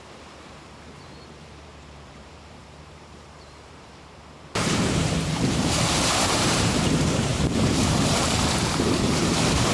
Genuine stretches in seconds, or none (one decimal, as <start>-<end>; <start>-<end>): none